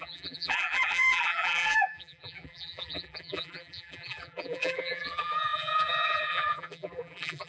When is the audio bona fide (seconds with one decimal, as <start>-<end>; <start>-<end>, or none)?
none